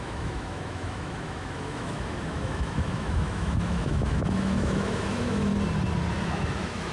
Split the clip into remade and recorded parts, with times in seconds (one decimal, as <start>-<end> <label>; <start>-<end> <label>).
0.0-5.5 remade; 5.5-6.2 recorded; 6.2-6.9 remade